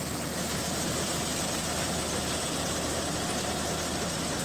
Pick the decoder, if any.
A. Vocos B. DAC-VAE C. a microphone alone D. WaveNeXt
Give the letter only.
C